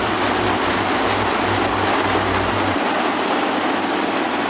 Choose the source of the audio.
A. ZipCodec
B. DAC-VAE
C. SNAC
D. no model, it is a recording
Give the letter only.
D